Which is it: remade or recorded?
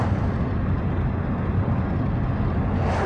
recorded